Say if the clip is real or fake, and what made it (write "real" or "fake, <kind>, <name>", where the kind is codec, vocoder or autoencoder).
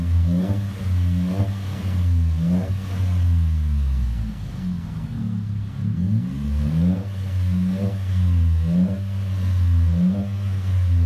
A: fake, codec, SNAC